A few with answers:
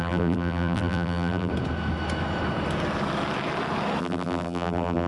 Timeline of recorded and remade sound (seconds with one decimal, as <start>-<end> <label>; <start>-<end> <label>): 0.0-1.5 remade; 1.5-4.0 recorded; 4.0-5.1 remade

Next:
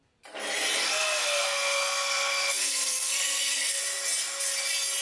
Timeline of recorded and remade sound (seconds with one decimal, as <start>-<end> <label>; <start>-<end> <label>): 0.0-0.8 recorded; 0.8-3.8 remade; 3.8-5.0 recorded

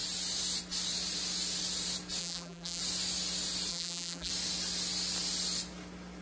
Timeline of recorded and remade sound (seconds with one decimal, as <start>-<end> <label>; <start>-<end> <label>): 0.0-2.2 recorded; 2.2-2.8 remade; 2.8-3.7 recorded; 3.7-4.3 remade; 4.3-6.2 recorded